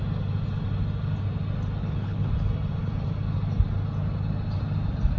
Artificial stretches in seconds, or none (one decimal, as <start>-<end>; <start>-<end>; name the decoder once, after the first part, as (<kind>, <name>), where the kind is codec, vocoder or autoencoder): 1.8-2.3 (codec, HILCodec)